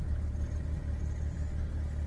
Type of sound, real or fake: real